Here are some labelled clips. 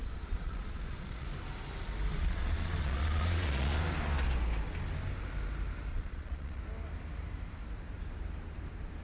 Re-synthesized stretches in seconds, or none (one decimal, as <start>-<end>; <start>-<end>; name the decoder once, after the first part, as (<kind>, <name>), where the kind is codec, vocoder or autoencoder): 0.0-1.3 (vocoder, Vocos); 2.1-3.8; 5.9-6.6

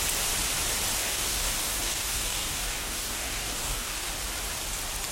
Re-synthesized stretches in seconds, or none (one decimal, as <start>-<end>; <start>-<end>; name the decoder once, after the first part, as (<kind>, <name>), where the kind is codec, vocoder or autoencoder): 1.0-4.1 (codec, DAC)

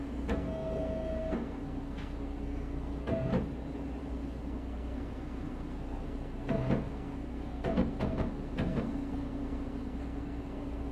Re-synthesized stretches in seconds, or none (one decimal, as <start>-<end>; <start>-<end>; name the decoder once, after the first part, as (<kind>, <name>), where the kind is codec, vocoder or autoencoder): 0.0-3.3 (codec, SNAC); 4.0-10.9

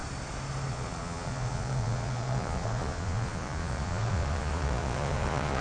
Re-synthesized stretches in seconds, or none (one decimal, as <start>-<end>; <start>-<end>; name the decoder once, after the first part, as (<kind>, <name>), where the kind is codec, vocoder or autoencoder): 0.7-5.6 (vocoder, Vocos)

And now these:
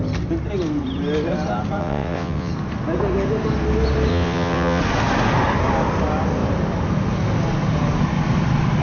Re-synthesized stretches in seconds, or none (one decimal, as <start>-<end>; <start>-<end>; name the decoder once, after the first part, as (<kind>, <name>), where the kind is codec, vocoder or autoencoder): 1.8-2.5 (vocoder, WaveNeXt); 4.1-4.8

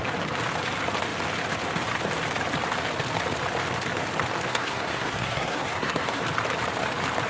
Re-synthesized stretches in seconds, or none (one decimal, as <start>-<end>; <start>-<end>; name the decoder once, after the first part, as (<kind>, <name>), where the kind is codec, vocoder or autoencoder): 4.5-6.2 (codec, SNAC)